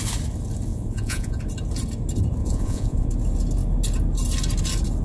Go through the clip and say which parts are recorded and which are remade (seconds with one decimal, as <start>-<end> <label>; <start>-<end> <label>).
0.0-0.7 recorded; 0.7-1.4 remade; 1.4-2.4 recorded; 2.4-3.1 remade; 3.1-5.0 recorded